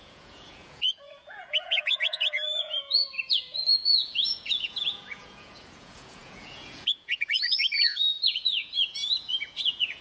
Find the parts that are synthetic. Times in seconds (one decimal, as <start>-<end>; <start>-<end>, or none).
0.0-10.0